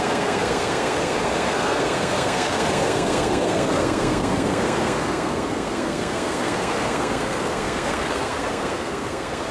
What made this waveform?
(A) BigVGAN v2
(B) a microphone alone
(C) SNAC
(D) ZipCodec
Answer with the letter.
C